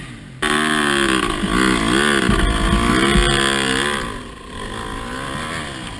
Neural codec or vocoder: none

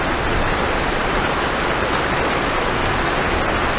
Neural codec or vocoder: none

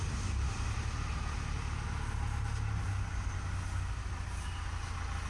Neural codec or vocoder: none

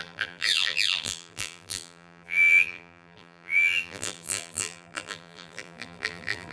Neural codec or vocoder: vocoder, BigVGAN v2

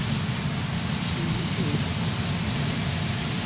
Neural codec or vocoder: none